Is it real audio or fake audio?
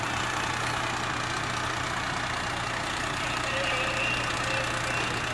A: real